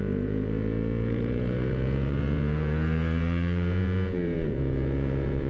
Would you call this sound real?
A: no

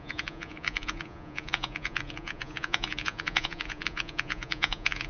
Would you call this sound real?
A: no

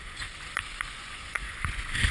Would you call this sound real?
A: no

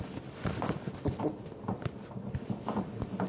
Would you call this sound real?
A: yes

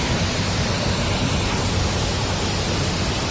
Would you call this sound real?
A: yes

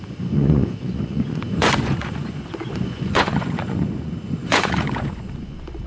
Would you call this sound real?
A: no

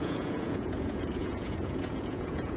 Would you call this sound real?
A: no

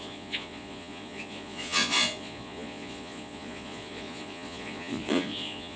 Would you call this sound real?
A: no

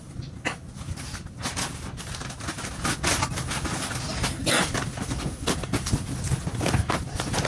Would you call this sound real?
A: yes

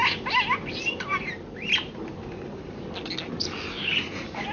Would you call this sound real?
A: yes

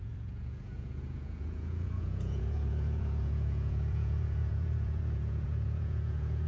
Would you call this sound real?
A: no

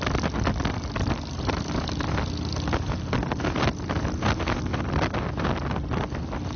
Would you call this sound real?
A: yes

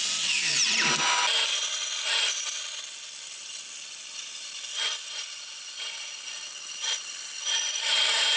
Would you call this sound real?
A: yes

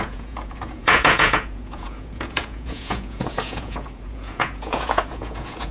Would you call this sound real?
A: no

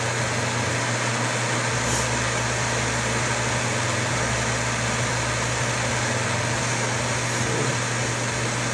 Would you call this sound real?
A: yes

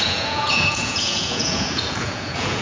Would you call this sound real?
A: no